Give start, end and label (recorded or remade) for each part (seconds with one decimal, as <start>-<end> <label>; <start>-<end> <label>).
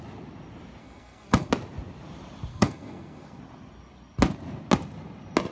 0.0-0.8 recorded; 0.8-1.5 remade; 1.5-2.5 recorded; 2.5-3.4 remade; 3.4-5.5 recorded